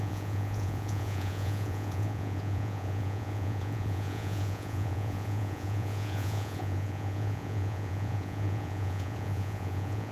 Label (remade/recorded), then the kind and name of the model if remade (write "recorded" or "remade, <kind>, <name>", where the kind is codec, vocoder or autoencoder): remade, vocoder, Vocos